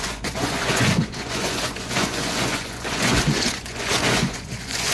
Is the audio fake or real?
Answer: fake